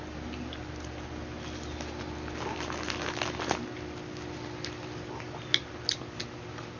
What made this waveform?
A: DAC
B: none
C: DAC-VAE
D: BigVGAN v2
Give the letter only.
B